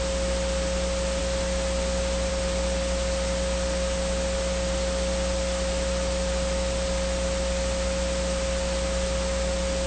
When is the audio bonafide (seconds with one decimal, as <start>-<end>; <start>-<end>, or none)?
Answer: 0.0-9.9